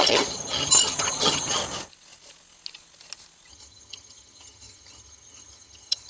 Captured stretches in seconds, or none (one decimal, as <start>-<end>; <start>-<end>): 1.6-3.5